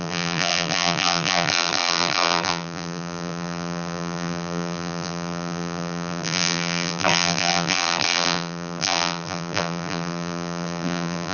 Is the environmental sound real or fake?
fake